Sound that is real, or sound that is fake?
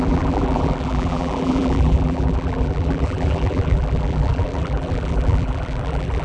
fake